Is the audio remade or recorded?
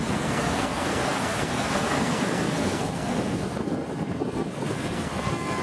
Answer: remade